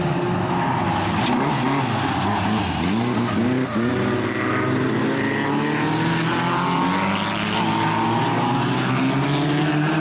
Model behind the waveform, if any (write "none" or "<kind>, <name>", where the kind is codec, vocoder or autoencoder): none